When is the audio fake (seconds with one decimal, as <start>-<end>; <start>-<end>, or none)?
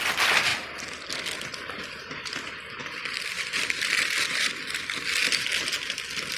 2.8-4.8